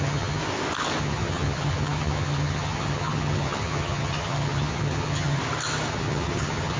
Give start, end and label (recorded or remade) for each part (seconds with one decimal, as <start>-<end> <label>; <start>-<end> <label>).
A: 0.0-0.4 remade; 0.4-1.0 recorded; 1.0-5.4 remade; 5.4-5.9 recorded; 5.9-6.8 remade